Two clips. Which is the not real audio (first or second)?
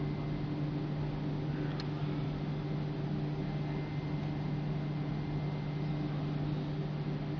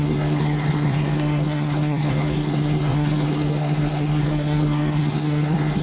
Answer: second